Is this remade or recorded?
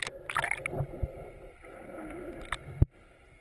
recorded